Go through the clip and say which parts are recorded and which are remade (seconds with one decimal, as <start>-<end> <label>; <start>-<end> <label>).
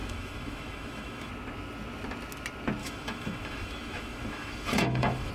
0.0-1.3 remade; 1.3-2.8 recorded; 2.8-5.3 remade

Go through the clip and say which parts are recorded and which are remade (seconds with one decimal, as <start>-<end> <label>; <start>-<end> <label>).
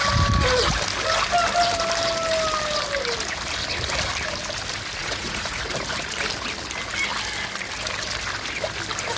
0.0-5.0 recorded; 5.0-5.6 remade; 5.6-9.2 recorded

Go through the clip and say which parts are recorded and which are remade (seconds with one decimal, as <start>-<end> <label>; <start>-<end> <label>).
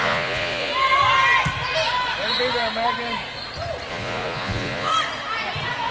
0.0-0.7 remade; 0.7-3.9 recorded; 3.9-4.9 remade; 4.9-5.9 recorded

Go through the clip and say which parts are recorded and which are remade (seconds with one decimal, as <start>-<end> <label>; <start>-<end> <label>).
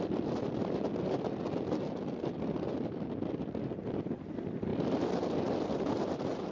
0.0-6.5 recorded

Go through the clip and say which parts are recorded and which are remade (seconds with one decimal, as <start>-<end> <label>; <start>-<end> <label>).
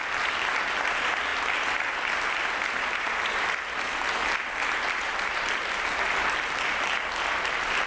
0.0-7.9 recorded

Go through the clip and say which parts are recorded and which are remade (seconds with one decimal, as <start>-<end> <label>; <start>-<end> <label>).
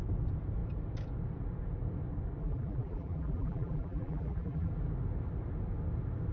0.0-2.4 recorded; 2.4-4.7 remade; 4.7-6.3 recorded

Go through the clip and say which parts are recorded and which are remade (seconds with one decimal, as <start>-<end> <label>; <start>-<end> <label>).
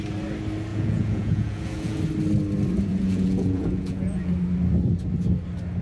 0.0-0.7 recorded; 0.7-2.0 remade; 2.0-2.9 recorded; 2.9-4.3 remade; 4.3-5.8 recorded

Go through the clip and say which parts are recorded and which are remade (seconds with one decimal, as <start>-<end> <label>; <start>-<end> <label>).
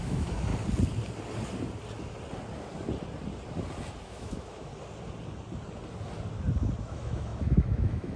0.0-0.5 remade; 0.5-4.0 recorded; 4.0-4.7 remade; 4.7-6.8 recorded; 6.8-8.2 remade